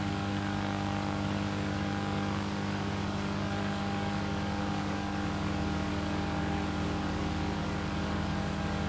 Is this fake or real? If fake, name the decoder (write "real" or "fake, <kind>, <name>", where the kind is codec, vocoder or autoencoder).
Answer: fake, codec, DAC